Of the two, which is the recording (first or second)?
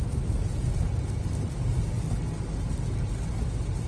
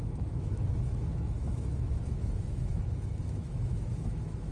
first